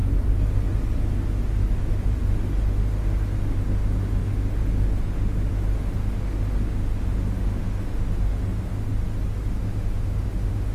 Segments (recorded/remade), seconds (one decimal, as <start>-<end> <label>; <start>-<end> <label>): 0.0-1.8 recorded; 1.8-2.9 remade; 2.9-3.4 recorded; 3.4-8.9 remade; 8.9-9.6 recorded; 9.6-10.7 remade